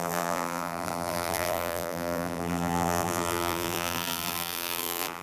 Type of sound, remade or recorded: remade